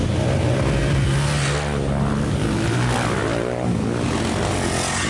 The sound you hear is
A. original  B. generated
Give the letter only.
A